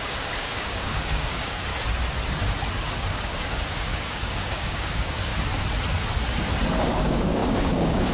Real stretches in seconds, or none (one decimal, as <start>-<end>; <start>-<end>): 1.7-3.1; 5.3-6.8